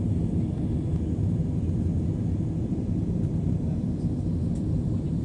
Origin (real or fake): real